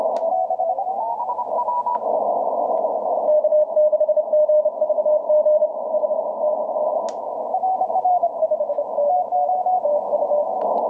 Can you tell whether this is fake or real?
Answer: real